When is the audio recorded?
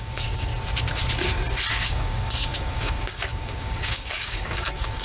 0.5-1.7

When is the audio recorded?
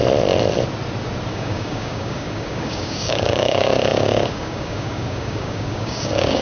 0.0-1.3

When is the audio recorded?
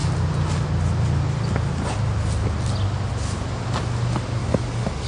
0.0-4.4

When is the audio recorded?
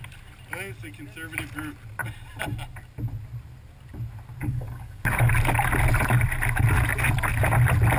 0.0-4.4; 5.3-8.0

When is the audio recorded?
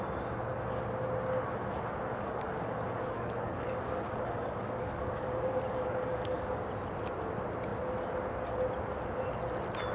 0.0-2.1; 6.7-9.9